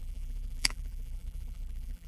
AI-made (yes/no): yes